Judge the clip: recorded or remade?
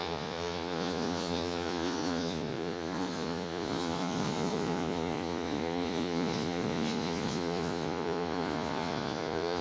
remade